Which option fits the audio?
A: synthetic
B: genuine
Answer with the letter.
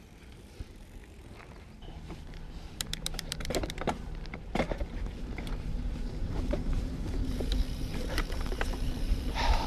A